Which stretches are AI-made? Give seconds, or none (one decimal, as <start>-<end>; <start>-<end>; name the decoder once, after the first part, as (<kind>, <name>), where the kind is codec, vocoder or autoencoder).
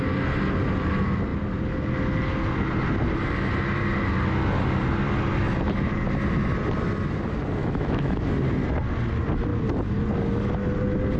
7.6-8.2 (autoencoder, DAC-VAE)